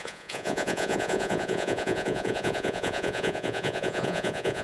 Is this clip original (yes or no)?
no